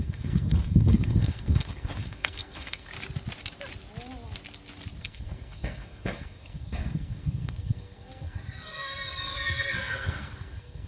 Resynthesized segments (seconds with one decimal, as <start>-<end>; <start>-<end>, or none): 0.0-2.9; 5.0-10.9